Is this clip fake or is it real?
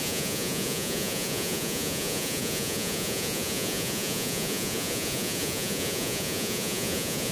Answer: fake